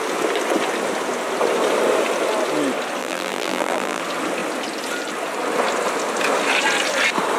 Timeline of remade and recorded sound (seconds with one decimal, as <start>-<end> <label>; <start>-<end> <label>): 0.0-3.0 recorded; 3.0-4.0 remade; 4.0-7.4 recorded